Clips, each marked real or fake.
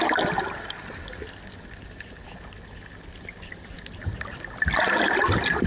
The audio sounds real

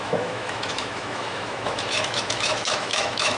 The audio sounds fake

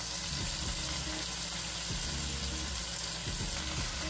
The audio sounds real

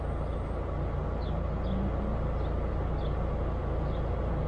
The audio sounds real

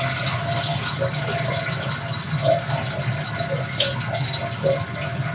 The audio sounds real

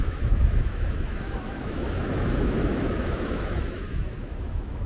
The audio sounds fake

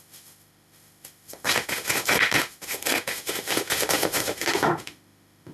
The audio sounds fake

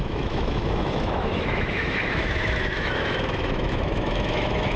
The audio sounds fake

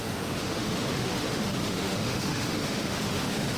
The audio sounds fake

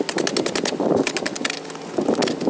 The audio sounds real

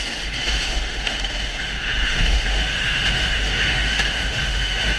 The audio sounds fake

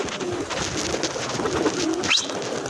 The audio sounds real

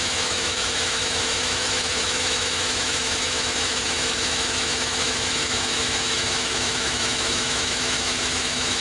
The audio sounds fake